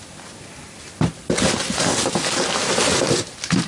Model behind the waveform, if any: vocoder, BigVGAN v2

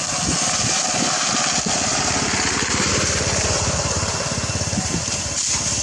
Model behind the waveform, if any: none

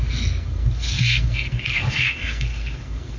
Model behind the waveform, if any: codec, SNAC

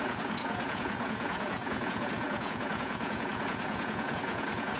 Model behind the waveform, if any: vocoder, Vocos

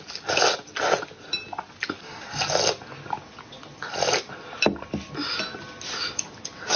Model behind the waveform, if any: none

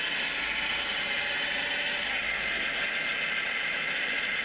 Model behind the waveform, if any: none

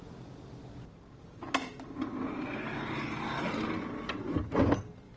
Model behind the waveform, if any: none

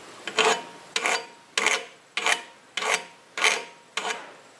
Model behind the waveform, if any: none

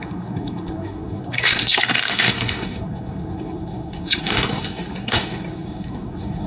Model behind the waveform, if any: codec, SNAC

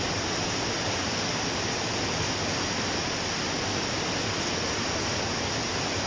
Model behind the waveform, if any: none